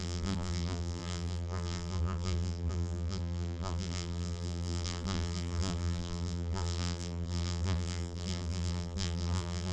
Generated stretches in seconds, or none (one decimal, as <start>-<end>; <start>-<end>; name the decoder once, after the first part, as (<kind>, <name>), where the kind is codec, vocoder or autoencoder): 0.0-9.7 (vocoder, BigVGAN v2)